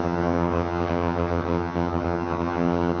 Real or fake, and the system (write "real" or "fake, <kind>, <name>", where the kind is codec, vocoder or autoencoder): fake, vocoder, HiFi-GAN